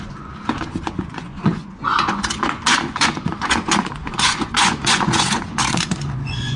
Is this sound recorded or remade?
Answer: remade